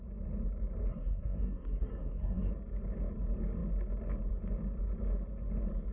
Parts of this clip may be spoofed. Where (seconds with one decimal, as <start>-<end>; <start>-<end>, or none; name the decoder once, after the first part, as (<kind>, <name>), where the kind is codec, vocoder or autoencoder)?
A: 0.9-2.5 (codec, SNAC)